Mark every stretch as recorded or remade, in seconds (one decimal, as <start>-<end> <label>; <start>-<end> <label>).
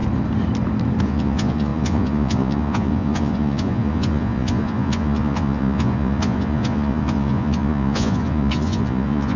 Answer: 0.0-1.0 recorded; 1.0-9.4 remade